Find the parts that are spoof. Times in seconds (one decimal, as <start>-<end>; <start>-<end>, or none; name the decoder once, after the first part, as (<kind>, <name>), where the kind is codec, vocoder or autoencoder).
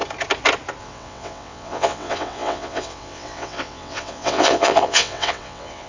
0.8-5.9 (vocoder, WaveNeXt)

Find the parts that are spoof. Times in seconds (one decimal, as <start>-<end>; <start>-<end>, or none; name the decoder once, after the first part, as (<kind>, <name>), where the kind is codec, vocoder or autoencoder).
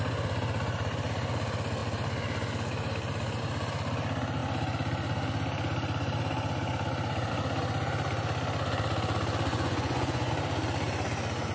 9.5-10.3 (vocoder, Vocos)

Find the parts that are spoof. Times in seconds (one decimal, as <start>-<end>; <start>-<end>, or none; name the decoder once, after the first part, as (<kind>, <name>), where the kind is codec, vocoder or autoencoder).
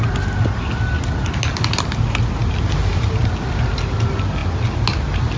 none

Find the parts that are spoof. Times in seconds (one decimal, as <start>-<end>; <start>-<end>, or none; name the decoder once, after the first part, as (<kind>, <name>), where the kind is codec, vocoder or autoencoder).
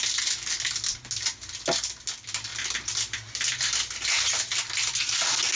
none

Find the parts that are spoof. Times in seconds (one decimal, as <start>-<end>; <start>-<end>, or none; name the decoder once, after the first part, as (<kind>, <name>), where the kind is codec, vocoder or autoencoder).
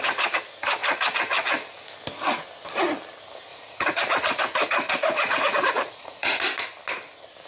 3.5-6.4 (vocoder, Vocos)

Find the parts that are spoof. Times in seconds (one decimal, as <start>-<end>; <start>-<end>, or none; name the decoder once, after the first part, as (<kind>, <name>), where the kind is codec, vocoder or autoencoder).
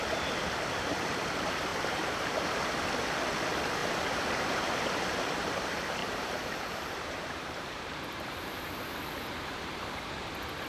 1.7-2.5 (vocoder, BigVGAN v2); 3.8-5.2; 6.0-10.1